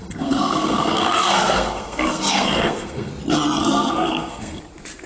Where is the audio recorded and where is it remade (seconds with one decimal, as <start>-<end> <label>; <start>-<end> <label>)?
0.0-3.1 remade; 3.1-3.6 recorded; 3.6-4.6 remade; 4.6-5.1 recorded

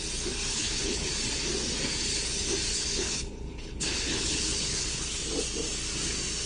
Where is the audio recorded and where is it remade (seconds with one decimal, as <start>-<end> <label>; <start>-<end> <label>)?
0.0-0.5 recorded; 0.5-1.1 remade; 1.1-2.7 recorded; 2.7-5.2 remade; 5.2-6.5 recorded

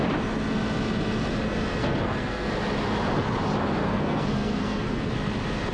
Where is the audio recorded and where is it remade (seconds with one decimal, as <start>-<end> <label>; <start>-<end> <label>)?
0.0-1.8 recorded; 1.8-2.5 remade; 2.5-3.8 recorded; 3.8-5.1 remade; 5.1-5.7 recorded

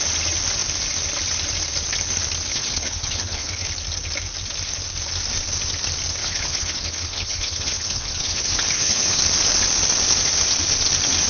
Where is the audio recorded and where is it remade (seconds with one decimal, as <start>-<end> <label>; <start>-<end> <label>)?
0.0-2.5 recorded; 2.5-3.7 remade; 3.7-6.2 recorded; 6.2-9.2 remade; 9.2-11.3 recorded

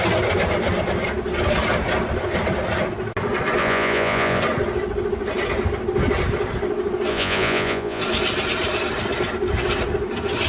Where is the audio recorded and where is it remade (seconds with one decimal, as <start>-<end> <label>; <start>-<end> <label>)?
0.0-3.6 recorded; 3.6-4.4 remade; 4.4-7.1 recorded; 7.1-8.0 remade; 8.0-10.5 recorded

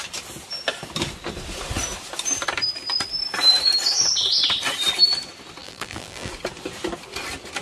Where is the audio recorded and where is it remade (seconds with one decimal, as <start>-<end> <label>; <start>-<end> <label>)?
0.0-5.6 recorded; 5.6-6.3 remade; 6.3-7.6 recorded

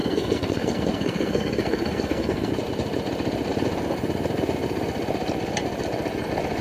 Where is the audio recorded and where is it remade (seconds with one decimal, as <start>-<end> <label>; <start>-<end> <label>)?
0.0-2.5 remade; 2.5-6.6 recorded

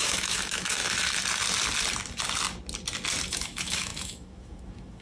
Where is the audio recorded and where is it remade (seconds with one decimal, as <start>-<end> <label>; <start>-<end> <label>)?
0.0-0.8 remade; 0.8-3.3 recorded; 3.3-5.0 remade